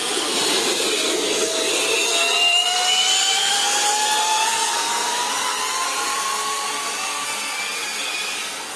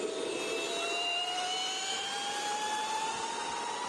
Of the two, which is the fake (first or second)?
first